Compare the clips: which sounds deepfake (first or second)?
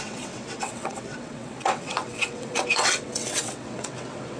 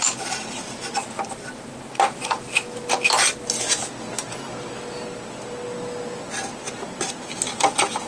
first